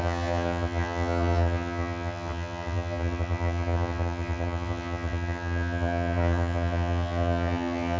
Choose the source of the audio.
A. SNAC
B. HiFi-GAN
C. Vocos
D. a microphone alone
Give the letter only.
B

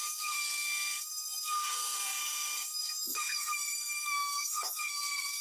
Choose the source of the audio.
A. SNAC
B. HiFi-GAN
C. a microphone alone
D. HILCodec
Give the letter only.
A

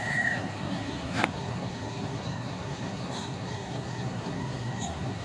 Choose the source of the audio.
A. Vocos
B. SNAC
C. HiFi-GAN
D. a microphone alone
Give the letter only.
B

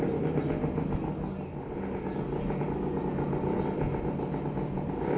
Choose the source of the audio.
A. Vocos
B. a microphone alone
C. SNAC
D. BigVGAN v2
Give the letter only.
B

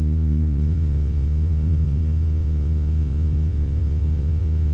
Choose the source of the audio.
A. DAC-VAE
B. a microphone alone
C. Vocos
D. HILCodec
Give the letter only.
C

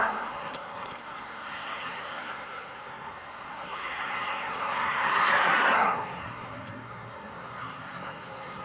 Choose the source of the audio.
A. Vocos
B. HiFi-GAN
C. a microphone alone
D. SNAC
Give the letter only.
D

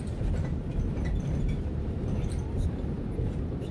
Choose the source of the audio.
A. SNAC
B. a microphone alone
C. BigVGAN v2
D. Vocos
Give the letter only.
C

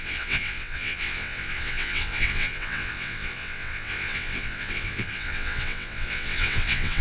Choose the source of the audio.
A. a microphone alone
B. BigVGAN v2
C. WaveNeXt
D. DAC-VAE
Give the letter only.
C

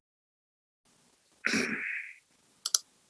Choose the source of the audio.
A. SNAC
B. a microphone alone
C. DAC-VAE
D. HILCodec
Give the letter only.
B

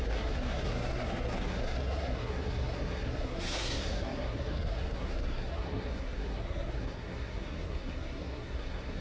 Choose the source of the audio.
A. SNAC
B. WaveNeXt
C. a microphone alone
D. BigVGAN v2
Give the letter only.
A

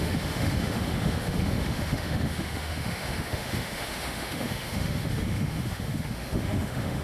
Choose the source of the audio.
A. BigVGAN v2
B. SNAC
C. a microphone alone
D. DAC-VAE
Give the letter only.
D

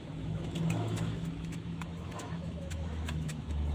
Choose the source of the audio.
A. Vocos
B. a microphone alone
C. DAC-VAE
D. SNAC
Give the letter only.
C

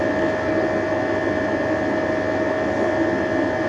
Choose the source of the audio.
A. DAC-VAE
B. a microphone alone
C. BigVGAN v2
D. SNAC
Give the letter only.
B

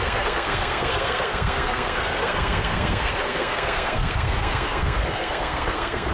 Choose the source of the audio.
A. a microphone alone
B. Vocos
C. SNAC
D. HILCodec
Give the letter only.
C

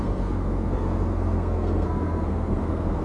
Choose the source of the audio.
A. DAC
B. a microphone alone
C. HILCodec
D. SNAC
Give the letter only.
D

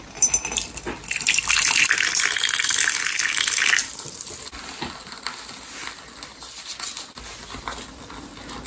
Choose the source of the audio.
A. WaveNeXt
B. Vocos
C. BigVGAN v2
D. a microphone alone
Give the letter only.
D